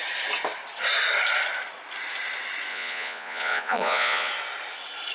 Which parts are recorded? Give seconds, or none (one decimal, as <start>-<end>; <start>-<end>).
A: 0.0-2.7; 4.3-5.1